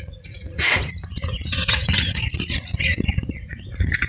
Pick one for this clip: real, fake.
fake